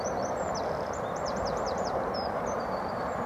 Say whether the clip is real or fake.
fake